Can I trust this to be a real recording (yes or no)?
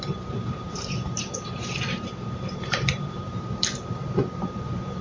no